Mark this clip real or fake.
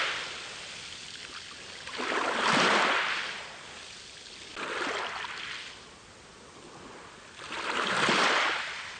real